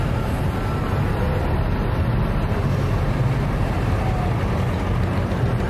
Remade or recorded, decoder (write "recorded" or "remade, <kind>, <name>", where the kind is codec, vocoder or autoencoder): recorded